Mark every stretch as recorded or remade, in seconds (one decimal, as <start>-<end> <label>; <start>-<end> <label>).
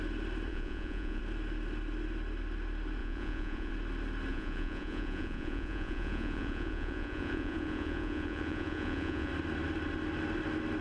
0.0-0.5 recorded; 0.5-1.2 remade; 1.2-3.0 recorded; 3.0-3.7 remade; 3.7-4.3 recorded; 4.3-9.3 remade; 9.3-10.8 recorded